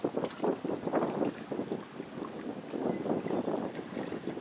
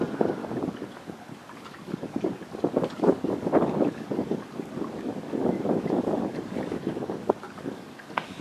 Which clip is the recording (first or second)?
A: first